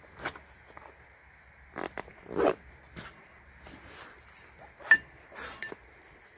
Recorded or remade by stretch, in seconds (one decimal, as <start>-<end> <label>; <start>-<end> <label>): 0.0-6.4 recorded